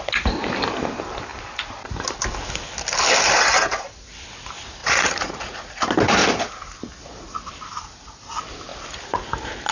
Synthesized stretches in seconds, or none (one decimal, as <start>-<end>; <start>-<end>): 4.8-5.7